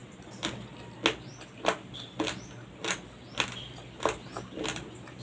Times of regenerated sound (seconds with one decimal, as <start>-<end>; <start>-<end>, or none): none